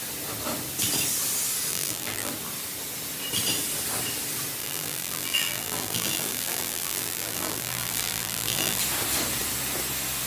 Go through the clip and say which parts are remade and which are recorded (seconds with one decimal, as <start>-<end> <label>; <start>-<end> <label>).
0.0-1.7 recorded; 1.7-2.3 remade; 2.3-4.6 recorded; 4.6-8.8 remade; 8.8-10.3 recorded